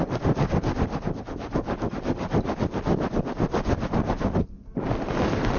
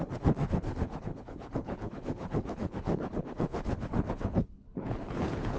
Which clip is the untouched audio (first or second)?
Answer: first